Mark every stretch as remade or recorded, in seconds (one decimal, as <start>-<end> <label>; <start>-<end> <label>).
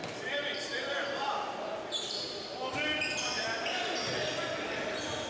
0.0-1.3 remade; 1.3-2.5 recorded; 2.5-3.0 remade; 3.0-5.3 recorded